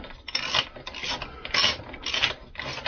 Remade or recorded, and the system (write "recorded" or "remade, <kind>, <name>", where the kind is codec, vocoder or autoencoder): recorded